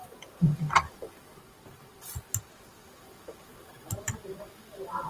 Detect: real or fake fake